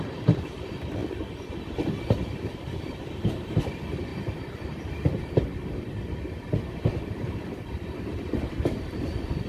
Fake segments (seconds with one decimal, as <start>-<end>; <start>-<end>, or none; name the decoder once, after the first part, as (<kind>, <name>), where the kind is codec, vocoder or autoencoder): 0.0-1.0 (vocoder, BigVGAN v2); 2.6-9.5